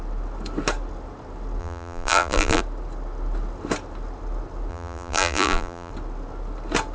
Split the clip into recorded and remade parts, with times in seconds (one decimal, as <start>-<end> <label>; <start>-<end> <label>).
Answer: 0.0-1.6 recorded; 1.6-2.6 remade; 2.6-4.7 recorded; 4.7-5.9 remade; 5.9-6.9 recorded